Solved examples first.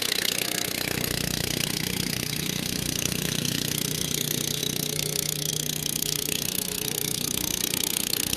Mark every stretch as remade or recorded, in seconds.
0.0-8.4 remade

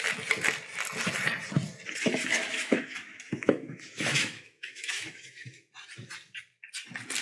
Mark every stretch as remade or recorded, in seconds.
0.0-2.0 recorded; 2.0-5.7 remade; 5.7-7.2 recorded

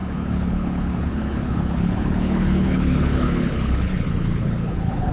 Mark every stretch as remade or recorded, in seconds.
0.0-5.1 remade

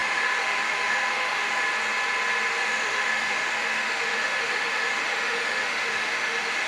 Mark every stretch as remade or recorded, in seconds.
0.0-1.6 remade; 1.6-2.6 recorded; 2.6-6.7 remade

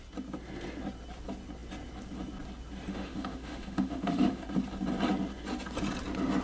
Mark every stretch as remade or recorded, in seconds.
0.0-2.9 recorded; 2.9-4.4 remade; 4.4-6.4 recorded